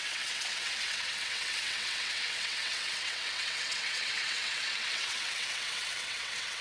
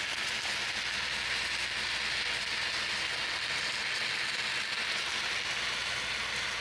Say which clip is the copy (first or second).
first